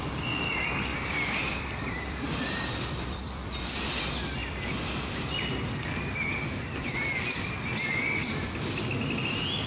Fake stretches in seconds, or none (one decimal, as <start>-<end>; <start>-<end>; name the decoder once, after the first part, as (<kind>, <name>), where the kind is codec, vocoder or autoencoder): none